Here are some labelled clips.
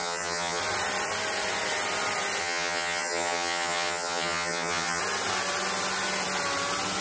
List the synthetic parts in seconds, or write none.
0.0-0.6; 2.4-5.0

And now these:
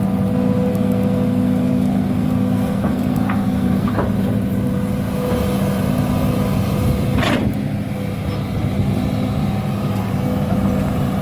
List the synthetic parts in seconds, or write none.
0.7-3.9

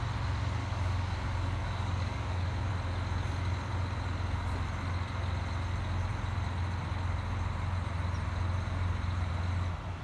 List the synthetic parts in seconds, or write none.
0.6-2.7

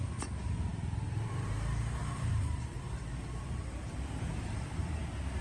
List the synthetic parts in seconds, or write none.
2.0-5.0